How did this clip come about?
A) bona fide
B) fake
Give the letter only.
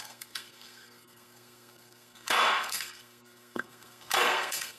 B